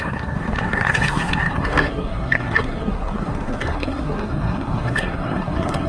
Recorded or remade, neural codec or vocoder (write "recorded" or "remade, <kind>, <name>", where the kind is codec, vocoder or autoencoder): remade, codec, SNAC